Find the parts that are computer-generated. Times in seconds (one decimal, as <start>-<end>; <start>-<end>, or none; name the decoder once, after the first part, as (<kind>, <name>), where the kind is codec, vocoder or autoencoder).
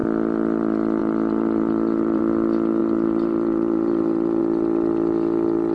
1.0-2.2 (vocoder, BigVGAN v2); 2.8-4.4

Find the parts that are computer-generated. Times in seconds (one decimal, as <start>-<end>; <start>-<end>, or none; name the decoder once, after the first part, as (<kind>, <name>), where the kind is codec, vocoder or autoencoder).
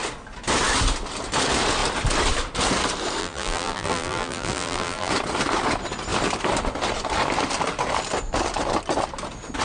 3.2-5.1 (vocoder, BigVGAN v2)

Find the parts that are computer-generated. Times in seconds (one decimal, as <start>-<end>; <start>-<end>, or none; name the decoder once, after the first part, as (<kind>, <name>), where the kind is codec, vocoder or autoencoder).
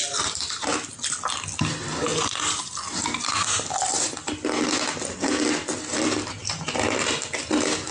2.1-2.8 (vocoder, BigVGAN v2)